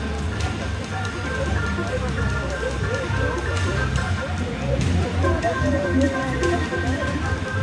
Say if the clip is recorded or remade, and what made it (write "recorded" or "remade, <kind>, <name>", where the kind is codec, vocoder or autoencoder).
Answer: recorded